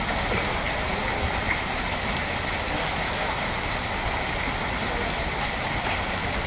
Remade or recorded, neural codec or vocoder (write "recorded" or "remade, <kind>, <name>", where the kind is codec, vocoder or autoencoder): recorded